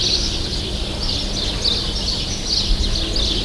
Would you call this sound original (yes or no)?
yes